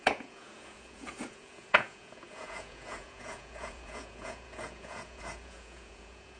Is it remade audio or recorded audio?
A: remade